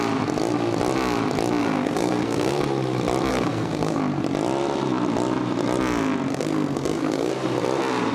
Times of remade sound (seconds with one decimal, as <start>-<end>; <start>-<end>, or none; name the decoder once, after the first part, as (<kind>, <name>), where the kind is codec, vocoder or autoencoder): 1.6-2.6 (codec, SNAC); 3.3-4.0; 6.3-7.3